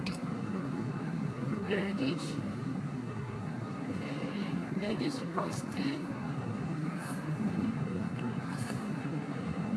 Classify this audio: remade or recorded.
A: remade